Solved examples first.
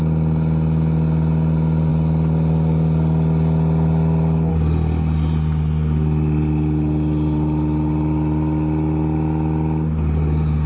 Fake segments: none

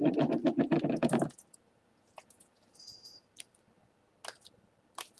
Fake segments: 1.0-3.3 (vocoder, Vocos)